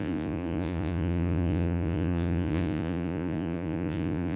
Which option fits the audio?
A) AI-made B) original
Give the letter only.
A